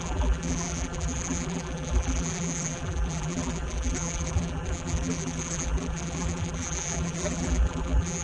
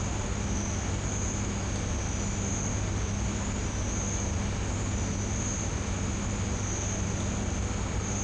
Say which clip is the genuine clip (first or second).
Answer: second